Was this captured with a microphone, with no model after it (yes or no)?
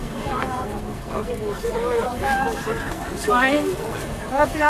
no